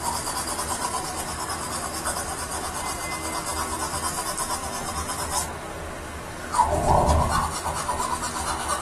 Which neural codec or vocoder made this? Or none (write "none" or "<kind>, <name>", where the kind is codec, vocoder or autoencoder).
none